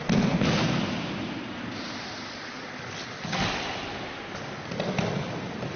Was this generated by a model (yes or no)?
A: no